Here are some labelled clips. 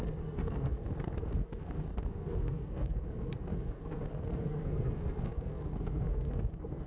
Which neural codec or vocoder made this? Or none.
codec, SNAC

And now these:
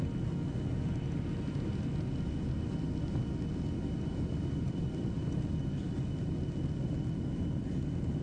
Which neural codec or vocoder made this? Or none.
none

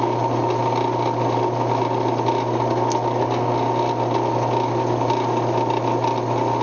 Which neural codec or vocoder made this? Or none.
none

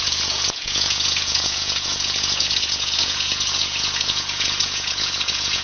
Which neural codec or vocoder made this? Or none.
vocoder, Vocos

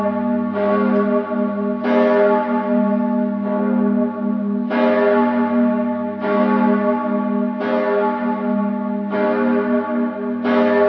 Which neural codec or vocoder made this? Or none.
none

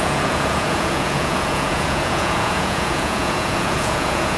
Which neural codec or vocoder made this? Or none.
vocoder, Vocos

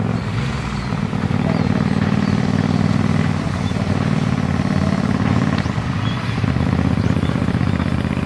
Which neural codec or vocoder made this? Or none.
none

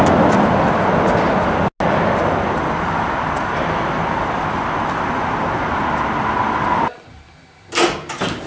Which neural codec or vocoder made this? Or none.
none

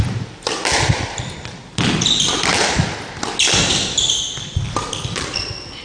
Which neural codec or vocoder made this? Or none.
none